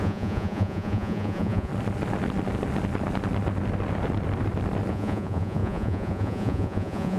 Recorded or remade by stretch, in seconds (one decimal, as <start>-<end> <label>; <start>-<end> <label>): 0.0-1.7 remade; 1.7-4.9 recorded; 4.9-7.2 remade